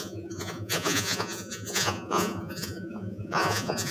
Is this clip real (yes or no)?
no